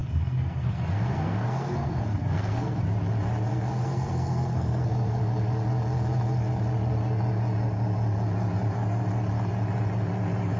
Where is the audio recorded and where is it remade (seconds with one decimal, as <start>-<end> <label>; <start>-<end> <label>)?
0.0-2.8 remade; 2.8-3.5 recorded; 3.5-5.2 remade; 5.2-10.6 recorded